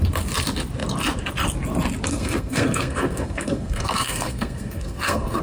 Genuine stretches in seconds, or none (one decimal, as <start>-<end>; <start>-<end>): 0.0-2.1